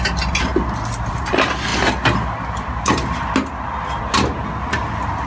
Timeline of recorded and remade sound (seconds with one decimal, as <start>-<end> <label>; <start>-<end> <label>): 0.0-5.3 recorded